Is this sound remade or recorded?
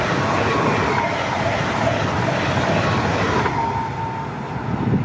recorded